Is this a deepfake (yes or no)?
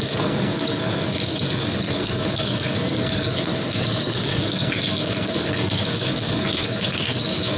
yes